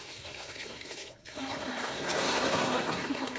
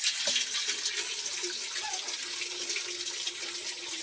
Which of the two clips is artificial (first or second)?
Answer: first